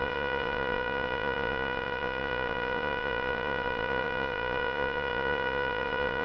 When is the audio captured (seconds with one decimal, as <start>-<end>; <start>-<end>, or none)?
none